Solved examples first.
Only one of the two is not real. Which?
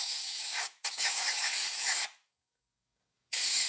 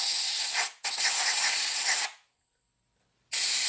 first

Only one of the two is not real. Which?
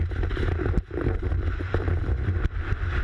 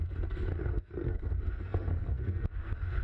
second